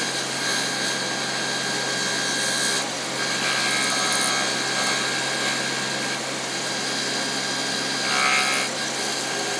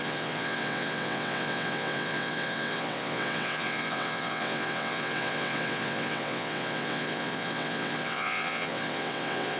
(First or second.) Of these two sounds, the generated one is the second